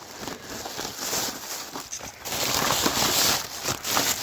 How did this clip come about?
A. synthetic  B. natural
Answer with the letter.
B